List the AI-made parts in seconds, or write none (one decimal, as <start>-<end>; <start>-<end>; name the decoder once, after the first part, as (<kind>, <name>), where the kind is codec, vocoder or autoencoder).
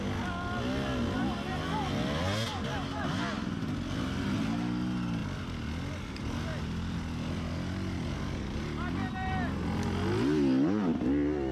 none